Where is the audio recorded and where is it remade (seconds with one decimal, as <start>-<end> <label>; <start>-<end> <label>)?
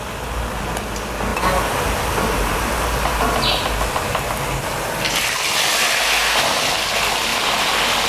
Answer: 0.0-7.3 recorded; 7.3-8.1 remade